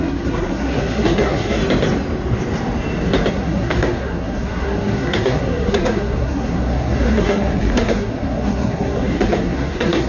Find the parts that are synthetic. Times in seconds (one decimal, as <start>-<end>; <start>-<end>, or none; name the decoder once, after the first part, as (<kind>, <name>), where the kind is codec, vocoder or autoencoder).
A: 0.0-1.6 (codec, SNAC); 3.3-10.1

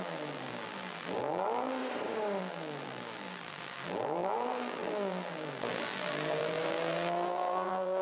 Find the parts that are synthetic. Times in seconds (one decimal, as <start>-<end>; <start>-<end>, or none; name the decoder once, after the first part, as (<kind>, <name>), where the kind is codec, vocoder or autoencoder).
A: 0.0-1.8 (vocoder, BigVGAN v2); 2.4-8.0

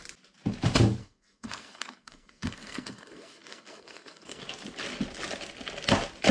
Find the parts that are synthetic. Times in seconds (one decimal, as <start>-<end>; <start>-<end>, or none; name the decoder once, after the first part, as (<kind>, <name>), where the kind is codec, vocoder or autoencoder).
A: 1.0-4.4 (codec, SNAC)

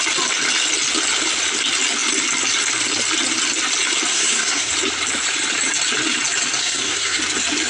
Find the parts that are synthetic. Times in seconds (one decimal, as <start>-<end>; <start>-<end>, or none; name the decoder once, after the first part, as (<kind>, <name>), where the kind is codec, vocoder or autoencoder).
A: 4.1-4.7 (codec, SNAC); 6.6-7.2

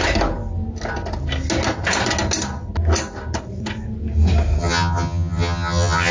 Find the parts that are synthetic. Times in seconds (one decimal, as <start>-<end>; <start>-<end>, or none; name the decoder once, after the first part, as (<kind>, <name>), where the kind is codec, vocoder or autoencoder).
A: 4.6-6.1 (vocoder, HiFi-GAN)

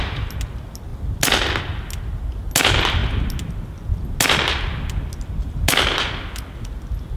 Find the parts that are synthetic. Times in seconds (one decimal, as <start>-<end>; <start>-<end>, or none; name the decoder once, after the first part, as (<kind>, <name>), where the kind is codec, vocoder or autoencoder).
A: none

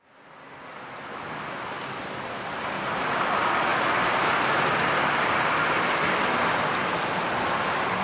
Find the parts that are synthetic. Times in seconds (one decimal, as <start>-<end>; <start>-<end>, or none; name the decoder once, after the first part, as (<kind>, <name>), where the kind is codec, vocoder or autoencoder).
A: none

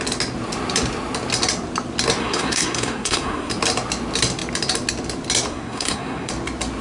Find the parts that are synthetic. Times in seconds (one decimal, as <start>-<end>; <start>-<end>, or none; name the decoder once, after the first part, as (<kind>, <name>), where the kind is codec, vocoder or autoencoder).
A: 2.2-3.5 (codec, SNAC); 5.5-6.3